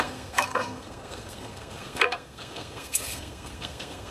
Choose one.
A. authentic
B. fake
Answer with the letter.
B